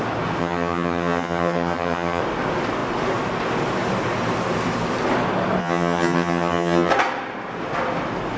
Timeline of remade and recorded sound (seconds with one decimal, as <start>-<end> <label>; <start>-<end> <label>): 0.0-0.4 recorded; 0.4-2.2 remade; 2.2-5.6 recorded; 5.6-6.9 remade; 6.9-8.4 recorded